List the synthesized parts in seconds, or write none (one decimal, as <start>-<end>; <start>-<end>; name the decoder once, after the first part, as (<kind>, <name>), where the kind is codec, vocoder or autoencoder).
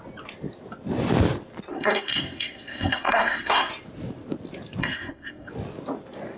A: 1.7-3.7 (codec, SNAC); 4.8-5.5